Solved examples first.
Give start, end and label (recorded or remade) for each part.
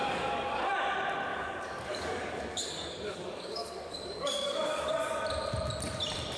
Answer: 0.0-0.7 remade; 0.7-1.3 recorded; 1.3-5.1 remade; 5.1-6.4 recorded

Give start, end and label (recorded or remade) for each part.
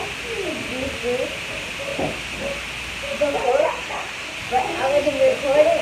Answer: 0.0-4.4 recorded; 4.4-5.1 remade; 5.1-5.8 recorded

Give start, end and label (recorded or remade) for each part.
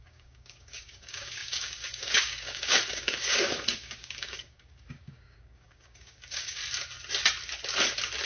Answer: 0.0-6.6 remade; 6.6-8.3 recorded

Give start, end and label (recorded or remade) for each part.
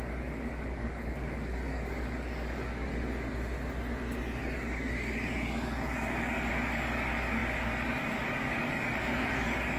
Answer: 0.0-2.9 remade; 2.9-4.4 recorded; 4.4-9.8 remade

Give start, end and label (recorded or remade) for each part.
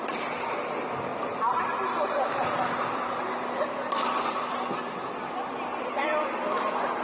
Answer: 0.0-7.0 recorded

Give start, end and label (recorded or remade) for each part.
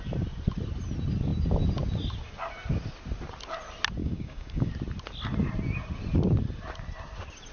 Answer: 0.0-4.0 recorded; 4.0-4.7 remade; 4.7-7.5 recorded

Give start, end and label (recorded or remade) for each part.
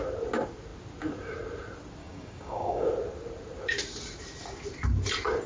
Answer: 0.0-2.0 recorded; 2.0-2.9 remade; 2.9-5.5 recorded